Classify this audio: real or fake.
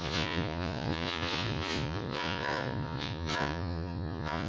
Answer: fake